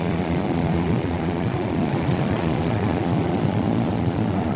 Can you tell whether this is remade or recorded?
remade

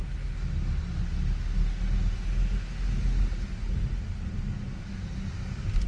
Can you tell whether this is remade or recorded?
recorded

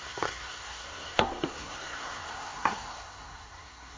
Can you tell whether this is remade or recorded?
remade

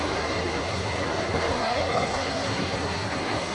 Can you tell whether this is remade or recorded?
remade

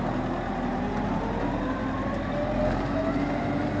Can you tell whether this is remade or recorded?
recorded